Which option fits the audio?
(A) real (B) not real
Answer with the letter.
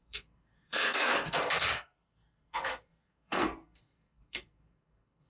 B